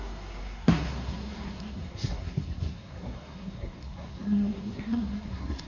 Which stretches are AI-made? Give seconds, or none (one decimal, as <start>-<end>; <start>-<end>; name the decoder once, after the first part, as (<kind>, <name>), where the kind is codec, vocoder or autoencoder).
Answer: 0.0-5.7 (codec, SNAC)